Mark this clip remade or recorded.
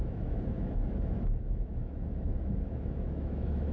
remade